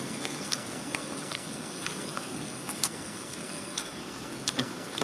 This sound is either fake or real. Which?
fake